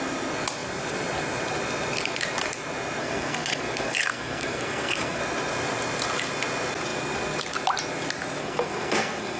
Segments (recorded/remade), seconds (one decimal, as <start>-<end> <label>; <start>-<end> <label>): 0.0-3.0 recorded; 3.0-5.2 remade; 5.2-8.4 recorded; 8.4-9.4 remade